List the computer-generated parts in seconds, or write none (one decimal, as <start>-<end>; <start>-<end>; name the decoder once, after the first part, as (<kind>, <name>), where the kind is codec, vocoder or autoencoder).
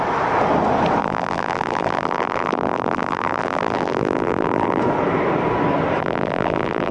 1.0-4.8 (vocoder, BigVGAN v2); 6.0-6.9